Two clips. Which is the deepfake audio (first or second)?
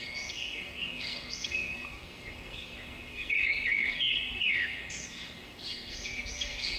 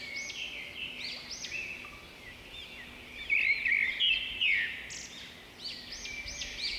first